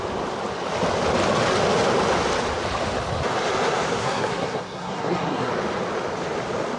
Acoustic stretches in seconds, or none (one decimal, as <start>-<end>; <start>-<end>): 0.0-4.0; 5.5-6.8